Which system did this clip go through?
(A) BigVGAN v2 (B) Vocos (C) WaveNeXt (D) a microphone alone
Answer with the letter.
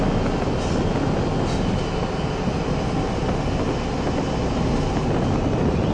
D